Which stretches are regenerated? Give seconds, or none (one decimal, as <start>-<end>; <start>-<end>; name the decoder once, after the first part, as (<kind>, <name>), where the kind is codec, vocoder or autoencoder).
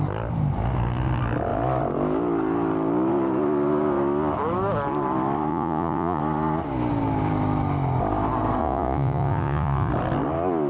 5.5-6.2 (vocoder, Vocos); 8.6-9.9